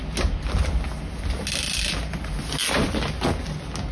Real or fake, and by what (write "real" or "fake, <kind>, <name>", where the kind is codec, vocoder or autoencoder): real